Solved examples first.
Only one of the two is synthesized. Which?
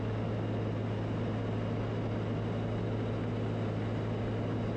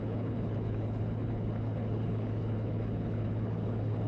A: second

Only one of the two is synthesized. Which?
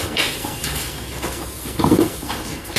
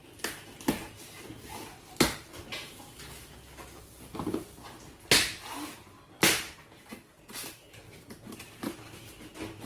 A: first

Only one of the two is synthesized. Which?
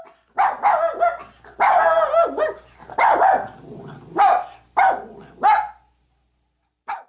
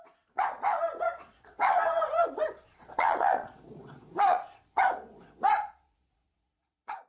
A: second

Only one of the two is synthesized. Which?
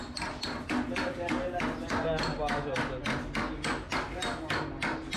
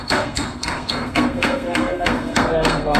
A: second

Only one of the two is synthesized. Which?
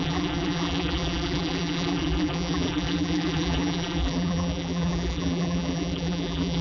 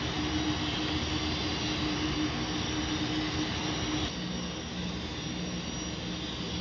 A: first